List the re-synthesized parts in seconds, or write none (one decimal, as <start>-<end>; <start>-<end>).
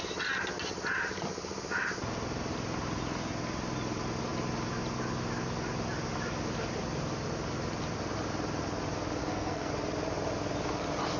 9.2-9.7